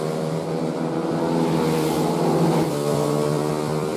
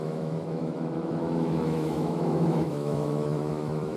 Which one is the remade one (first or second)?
second